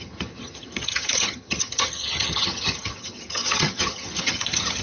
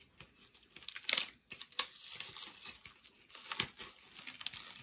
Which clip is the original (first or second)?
second